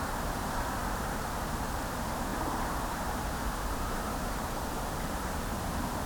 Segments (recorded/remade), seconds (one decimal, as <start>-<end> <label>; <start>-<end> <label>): 0.0-6.1 remade